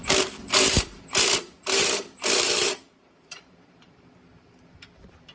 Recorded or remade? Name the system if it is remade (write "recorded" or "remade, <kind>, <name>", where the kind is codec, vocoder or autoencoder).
remade, vocoder, BigVGAN v2